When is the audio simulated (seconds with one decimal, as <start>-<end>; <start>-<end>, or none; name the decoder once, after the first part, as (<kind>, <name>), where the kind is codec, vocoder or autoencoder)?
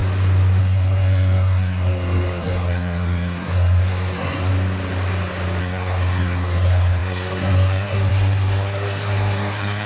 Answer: 0.6-4.5 (codec, SNAC); 5.6-9.9